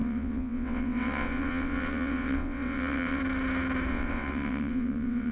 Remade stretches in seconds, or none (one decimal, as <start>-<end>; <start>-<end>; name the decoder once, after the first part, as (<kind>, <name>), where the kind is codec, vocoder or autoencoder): 0.0-3.2 (vocoder, WaveNeXt); 3.9-5.3